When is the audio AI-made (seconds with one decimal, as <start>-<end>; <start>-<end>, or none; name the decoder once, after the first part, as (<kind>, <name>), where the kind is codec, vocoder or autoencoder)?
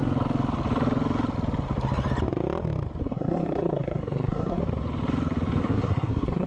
3.0-4.6 (codec, SNAC); 5.6-6.5